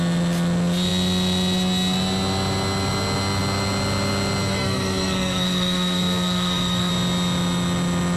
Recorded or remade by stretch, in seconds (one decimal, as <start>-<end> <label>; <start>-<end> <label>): 0.0-4.5 recorded; 4.5-6.9 remade; 6.9-8.2 recorded